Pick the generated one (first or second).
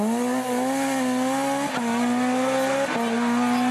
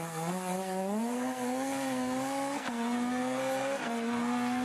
second